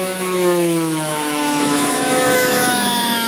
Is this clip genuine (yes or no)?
no